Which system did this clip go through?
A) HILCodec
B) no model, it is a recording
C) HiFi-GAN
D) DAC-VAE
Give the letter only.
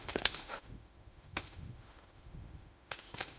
D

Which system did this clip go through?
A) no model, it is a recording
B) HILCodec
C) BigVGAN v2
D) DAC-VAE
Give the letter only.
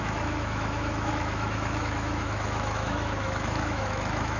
D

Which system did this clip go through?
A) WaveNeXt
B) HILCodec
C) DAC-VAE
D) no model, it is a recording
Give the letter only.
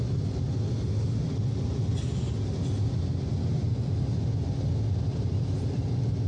D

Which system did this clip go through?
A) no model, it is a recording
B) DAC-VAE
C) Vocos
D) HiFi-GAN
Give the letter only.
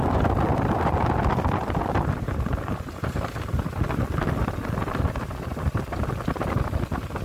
A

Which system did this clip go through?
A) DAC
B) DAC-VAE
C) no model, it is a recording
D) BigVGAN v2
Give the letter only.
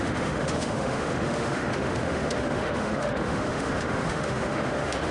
B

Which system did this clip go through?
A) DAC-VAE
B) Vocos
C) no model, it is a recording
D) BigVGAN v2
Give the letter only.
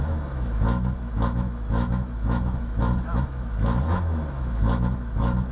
A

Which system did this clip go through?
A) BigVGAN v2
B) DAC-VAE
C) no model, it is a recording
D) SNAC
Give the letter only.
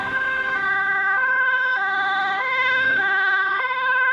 B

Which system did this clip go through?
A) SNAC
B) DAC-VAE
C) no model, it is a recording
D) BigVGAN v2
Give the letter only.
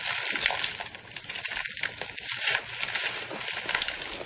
C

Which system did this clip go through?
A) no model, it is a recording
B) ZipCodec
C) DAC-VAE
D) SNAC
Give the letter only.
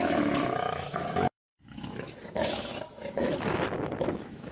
C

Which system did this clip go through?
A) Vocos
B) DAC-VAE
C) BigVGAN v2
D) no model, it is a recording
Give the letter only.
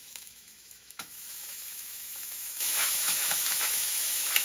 B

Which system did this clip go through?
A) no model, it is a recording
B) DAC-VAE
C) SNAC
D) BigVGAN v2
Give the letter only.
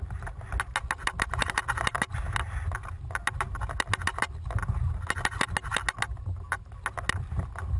A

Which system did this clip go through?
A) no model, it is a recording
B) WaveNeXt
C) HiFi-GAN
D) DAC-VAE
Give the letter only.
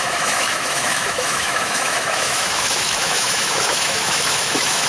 D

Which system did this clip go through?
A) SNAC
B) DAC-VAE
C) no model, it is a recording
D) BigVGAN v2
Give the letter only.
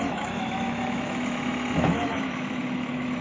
B